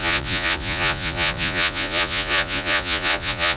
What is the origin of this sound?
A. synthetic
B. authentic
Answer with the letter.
A